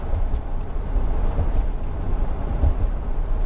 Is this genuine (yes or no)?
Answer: yes